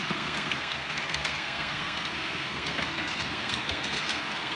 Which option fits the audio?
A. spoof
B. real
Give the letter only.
A